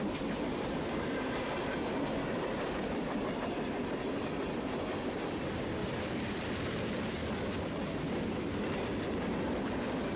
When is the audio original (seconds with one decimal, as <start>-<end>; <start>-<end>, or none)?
0.0-10.2